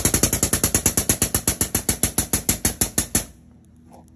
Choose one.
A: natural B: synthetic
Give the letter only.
A